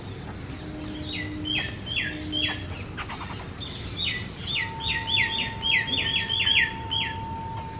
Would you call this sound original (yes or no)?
yes